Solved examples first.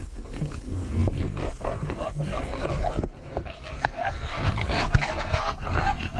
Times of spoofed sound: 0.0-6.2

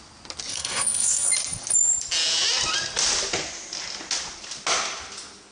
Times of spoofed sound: 0.5-1.3

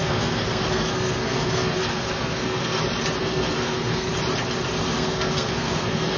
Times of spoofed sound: 0.0-2.8; 3.2-4.1; 4.8-6.2

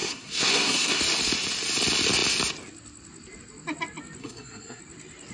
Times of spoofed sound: 0.0-1.0; 4.2-4.8

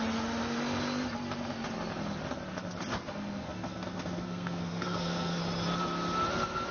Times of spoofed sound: 2.9-5.4